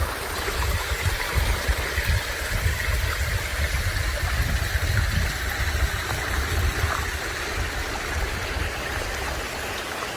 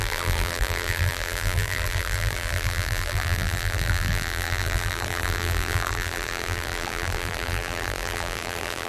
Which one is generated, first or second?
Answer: second